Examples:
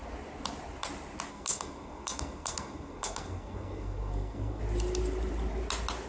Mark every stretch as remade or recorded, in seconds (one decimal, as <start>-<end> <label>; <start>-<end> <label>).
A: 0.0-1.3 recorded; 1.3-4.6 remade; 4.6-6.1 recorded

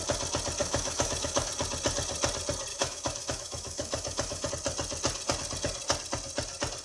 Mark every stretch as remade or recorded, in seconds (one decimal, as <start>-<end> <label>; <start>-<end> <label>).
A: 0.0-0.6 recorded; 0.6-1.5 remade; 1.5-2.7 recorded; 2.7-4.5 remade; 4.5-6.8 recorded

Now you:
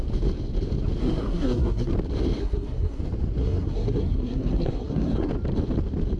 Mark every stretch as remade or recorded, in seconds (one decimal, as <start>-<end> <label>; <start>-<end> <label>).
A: 0.0-1.0 recorded; 1.0-1.9 remade; 1.9-2.4 recorded; 2.4-3.0 remade; 3.0-3.4 recorded; 3.4-5.3 remade; 5.3-6.2 recorded